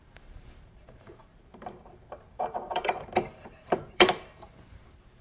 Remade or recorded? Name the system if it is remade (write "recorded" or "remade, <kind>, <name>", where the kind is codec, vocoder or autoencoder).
remade, vocoder, BigVGAN v2